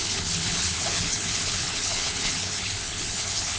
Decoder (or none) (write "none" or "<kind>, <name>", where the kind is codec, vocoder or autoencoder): codec, HILCodec